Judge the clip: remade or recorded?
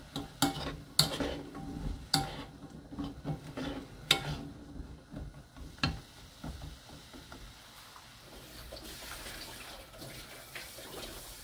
recorded